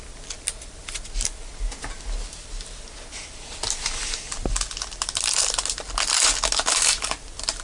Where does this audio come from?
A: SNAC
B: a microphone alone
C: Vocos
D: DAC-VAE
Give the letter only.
B